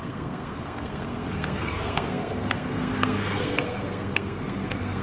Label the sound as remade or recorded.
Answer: remade